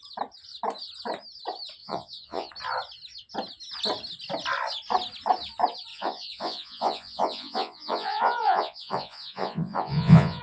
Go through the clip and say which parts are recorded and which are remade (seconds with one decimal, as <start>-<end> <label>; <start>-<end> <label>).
0.0-1.8 recorded; 1.8-2.5 remade; 2.5-5.9 recorded; 5.9-10.4 remade